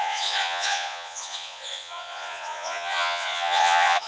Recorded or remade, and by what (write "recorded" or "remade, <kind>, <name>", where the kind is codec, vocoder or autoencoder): remade, vocoder, Vocos